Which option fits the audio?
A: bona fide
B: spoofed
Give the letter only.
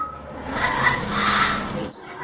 A